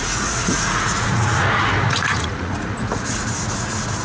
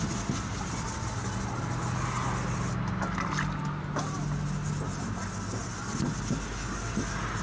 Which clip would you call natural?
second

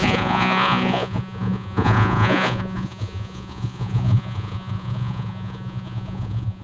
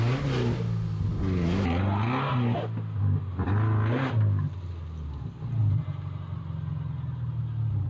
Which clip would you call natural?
second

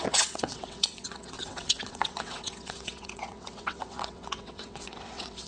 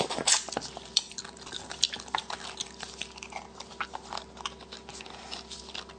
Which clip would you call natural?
second